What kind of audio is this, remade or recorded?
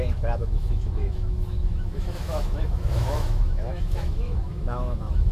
remade